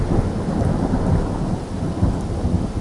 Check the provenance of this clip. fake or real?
real